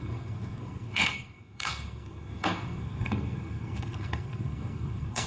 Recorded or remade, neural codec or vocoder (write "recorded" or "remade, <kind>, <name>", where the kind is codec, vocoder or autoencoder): remade, codec, SNAC